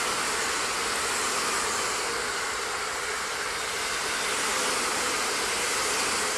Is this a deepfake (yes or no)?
no